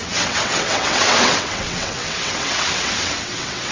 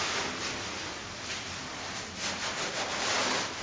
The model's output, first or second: first